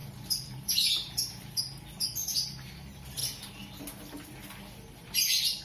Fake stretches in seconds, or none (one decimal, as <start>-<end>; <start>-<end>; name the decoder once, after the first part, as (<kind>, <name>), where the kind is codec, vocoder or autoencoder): 0.0-1.6 (vocoder, BigVGAN v2); 2.2-2.7